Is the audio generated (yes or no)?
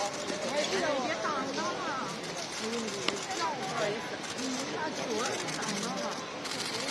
no